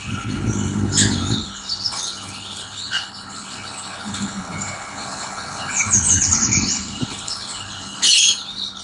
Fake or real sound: fake